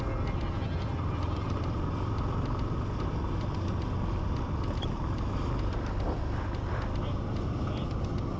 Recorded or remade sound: recorded